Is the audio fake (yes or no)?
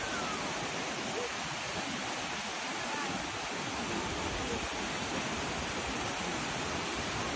no